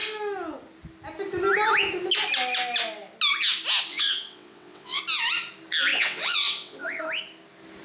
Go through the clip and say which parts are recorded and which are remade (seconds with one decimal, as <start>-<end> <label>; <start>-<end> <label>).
0.0-3.9 recorded; 3.9-5.0 remade; 5.0-5.9 recorded; 5.9-7.0 remade; 7.0-7.8 recorded